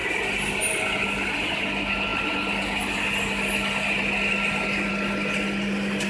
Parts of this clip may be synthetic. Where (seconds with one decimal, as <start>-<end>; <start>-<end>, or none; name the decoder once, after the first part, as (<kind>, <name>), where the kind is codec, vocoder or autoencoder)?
none